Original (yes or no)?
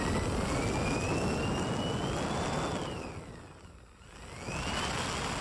yes